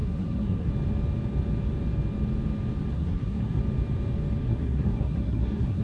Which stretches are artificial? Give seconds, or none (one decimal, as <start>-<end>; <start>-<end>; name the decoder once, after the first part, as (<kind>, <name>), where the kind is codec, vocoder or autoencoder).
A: 0.0-0.7 (codec, SNAC); 2.9-3.6; 4.4-5.8